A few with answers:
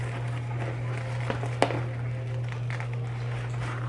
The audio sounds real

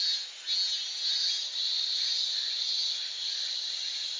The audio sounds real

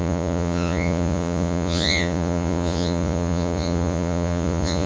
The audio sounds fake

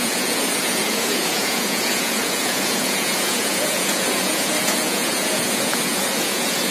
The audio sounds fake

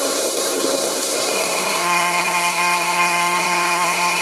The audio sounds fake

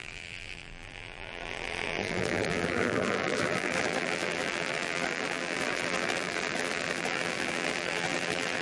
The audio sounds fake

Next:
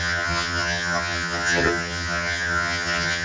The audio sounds fake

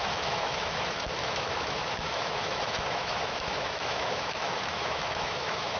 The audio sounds fake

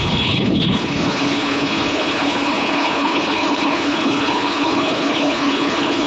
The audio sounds fake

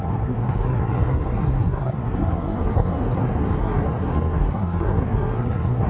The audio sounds fake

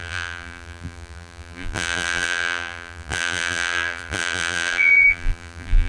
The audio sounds fake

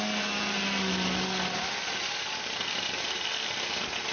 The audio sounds real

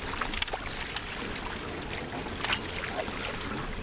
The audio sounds real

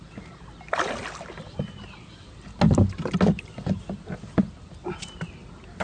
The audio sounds real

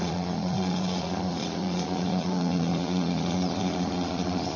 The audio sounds fake